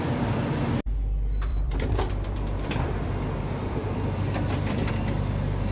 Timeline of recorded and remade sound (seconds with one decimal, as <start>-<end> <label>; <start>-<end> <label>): 0.0-1.5 recorded; 1.5-4.9 remade; 4.9-5.7 recorded